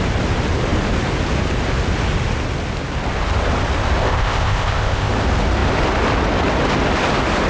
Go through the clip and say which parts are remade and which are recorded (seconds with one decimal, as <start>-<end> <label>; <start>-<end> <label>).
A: 0.0-4.0 recorded; 4.0-5.1 remade; 5.1-7.5 recorded